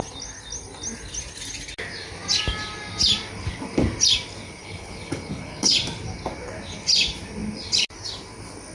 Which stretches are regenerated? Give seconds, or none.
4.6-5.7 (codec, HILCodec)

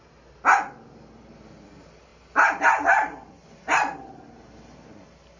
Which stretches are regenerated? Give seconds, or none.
none

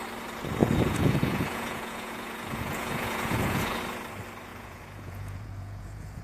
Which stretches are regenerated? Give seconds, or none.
0.6-3.8 (vocoder, Vocos); 4.5-6.2

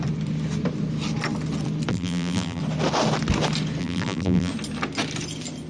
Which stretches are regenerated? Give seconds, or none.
1.9-2.6 (vocoder, BigVGAN v2); 3.8-4.5

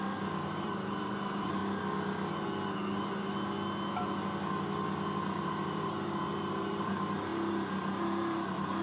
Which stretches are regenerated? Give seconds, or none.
0.0-1.6 (vocoder, BigVGAN v2); 5.4-8.8